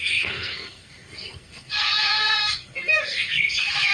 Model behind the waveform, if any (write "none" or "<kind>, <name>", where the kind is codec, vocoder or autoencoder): codec, SNAC